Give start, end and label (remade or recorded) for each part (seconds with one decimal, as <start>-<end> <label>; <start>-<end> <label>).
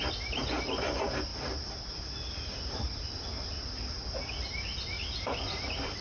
0.0-6.0 recorded